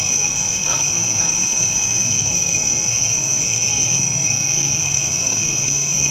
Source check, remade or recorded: remade